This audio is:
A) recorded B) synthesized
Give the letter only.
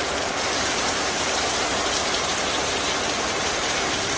B